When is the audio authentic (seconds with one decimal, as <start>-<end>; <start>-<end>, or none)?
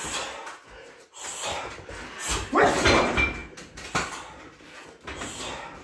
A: 0.0-5.8